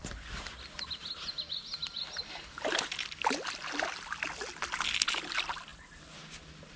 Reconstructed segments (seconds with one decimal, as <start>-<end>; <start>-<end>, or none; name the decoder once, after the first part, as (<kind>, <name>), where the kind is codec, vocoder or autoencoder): none